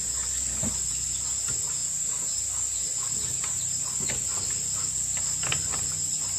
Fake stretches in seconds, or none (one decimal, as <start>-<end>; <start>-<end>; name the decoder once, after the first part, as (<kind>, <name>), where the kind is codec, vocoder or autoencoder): none

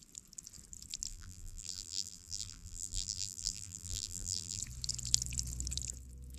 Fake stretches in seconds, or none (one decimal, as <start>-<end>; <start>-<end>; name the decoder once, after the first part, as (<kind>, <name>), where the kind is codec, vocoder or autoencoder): 1.1-4.6 (vocoder, BigVGAN v2)